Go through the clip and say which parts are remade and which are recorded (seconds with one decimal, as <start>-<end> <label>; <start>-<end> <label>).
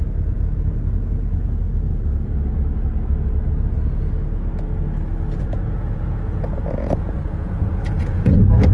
0.0-1.9 remade; 1.9-5.4 recorded; 5.4-8.7 remade